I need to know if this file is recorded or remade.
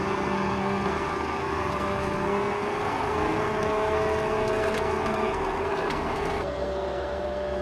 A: remade